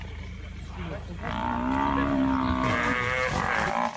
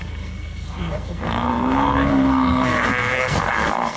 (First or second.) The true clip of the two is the first